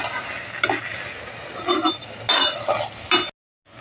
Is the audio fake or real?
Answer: real